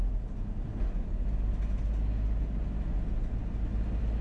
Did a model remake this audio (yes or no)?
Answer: no